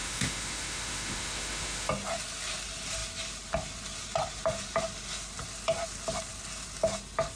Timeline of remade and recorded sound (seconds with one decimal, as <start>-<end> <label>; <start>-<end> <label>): 0.0-1.9 remade; 1.9-7.4 recorded

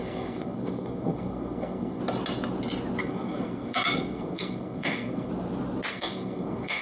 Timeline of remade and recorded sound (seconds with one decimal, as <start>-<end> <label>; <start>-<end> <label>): 0.0-2.0 remade; 2.0-3.0 recorded; 3.0-5.3 remade; 5.3-5.9 recorded; 5.9-6.8 remade